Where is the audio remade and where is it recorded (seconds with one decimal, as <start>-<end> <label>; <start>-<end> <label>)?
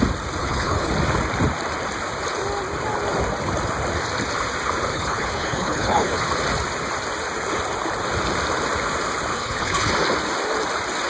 0.0-0.4 recorded; 0.4-0.9 remade; 0.9-4.9 recorded; 4.9-6.2 remade; 6.2-9.3 recorded; 9.3-9.9 remade; 9.9-11.1 recorded